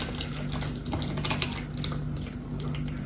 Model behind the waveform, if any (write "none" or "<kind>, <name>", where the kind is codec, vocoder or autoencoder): none